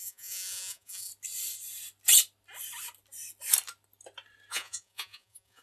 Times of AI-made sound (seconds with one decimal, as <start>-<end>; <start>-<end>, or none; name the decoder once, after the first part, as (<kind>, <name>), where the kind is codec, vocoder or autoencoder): 0.0-1.1 (vocoder, Vocos); 4.5-5.6